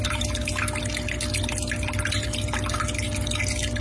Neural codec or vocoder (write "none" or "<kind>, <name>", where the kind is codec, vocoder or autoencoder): none